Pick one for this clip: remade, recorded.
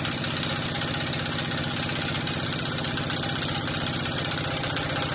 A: recorded